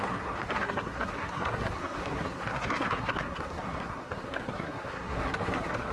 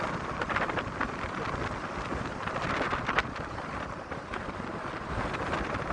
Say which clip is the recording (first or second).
second